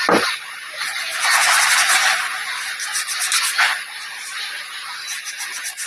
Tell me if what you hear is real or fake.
real